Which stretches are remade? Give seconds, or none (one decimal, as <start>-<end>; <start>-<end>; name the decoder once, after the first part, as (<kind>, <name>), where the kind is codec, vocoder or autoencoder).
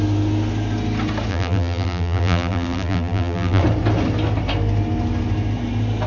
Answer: 1.3-3.6 (vocoder, BigVGAN v2)